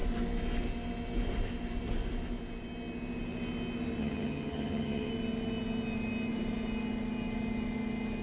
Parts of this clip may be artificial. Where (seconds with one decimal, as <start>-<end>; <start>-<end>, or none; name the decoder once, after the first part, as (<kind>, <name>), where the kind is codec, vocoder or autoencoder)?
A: 4.0-5.1 (vocoder, HiFi-GAN)